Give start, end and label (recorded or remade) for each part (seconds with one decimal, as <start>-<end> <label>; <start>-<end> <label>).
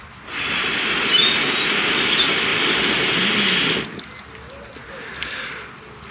0.0-6.1 recorded